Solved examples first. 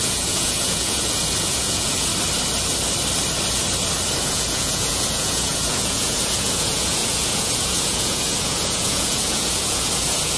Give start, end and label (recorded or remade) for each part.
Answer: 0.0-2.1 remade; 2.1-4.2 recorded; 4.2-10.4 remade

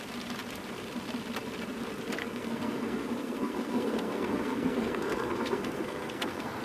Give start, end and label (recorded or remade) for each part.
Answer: 0.0-2.2 recorded; 2.2-6.6 remade

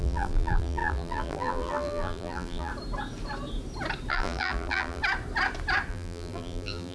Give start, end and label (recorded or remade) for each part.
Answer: 0.0-2.7 remade; 2.7-4.1 recorded; 4.1-5.0 remade; 5.0-5.9 recorded; 5.9-6.9 remade

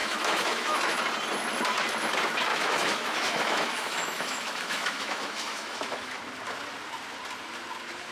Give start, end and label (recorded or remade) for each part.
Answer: 0.0-1.0 remade; 1.0-2.5 recorded; 2.5-6.2 remade; 6.2-8.1 recorded